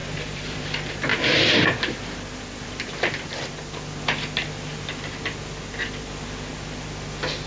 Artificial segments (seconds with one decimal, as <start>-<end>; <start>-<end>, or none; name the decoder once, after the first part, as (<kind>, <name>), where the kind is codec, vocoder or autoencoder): 0.0-0.7 (vocoder, BigVGAN v2)